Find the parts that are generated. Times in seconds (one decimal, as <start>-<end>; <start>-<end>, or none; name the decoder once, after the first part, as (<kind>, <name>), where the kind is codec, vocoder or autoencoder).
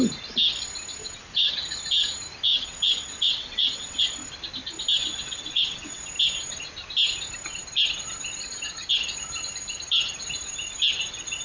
1.0-1.5 (vocoder, WaveNeXt); 2.5-4.0; 5.0-6.0